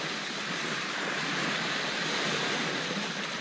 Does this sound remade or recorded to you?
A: recorded